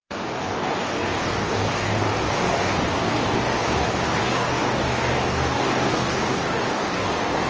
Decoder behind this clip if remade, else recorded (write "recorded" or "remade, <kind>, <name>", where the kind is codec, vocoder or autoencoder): remade, codec, DAC